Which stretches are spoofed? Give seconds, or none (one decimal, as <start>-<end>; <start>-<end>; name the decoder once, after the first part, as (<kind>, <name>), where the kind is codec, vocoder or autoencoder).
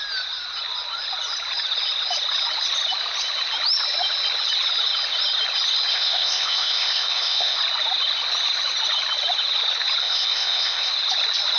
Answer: 5.9-7.6 (codec, ZipCodec); 10.0-10.9